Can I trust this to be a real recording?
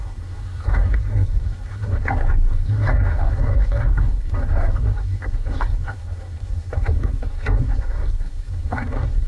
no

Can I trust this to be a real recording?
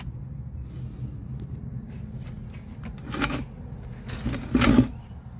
yes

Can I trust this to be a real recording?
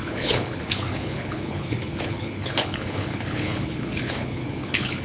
no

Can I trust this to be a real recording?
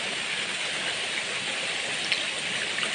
yes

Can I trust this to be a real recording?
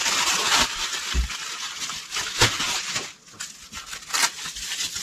yes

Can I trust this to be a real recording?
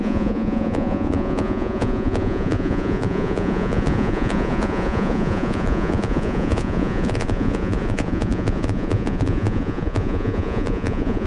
no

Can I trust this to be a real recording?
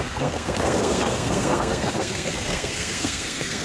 no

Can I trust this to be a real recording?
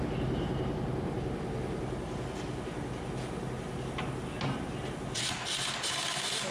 yes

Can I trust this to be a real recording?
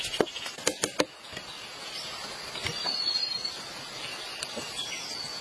yes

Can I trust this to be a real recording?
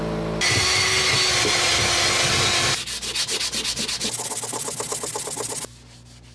yes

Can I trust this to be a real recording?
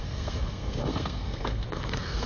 no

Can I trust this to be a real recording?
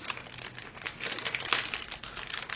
yes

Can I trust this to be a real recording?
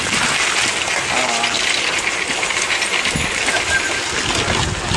yes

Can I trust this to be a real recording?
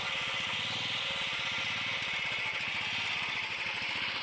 yes